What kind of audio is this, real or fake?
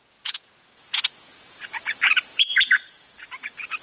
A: fake